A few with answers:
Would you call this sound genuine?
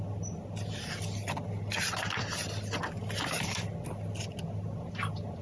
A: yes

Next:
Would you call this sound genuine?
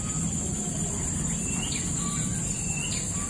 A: yes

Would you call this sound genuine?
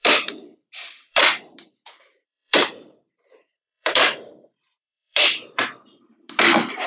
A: no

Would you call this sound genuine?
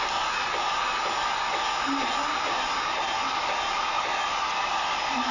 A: yes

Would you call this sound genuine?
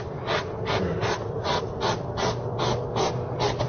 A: yes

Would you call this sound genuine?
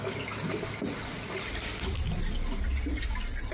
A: yes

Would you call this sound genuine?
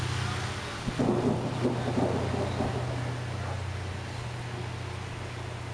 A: yes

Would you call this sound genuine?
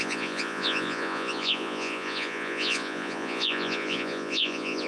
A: no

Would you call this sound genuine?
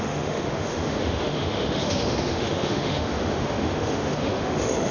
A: no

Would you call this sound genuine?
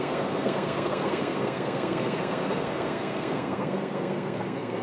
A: no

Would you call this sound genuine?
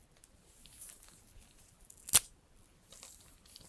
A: yes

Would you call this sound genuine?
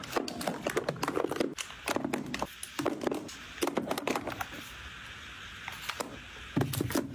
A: yes